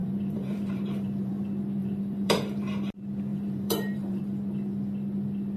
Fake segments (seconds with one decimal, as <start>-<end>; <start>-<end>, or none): 0.0-1.3; 1.8-2.6; 3.3-4.2